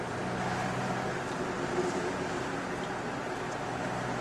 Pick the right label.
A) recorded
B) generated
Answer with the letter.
A